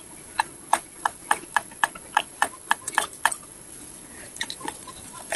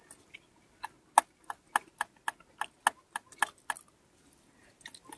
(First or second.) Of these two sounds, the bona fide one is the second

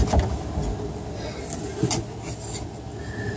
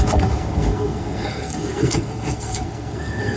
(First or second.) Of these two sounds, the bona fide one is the first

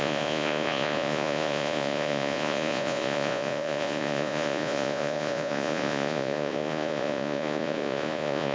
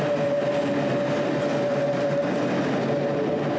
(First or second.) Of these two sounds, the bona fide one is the second